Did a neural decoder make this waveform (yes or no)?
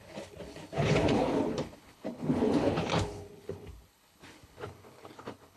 yes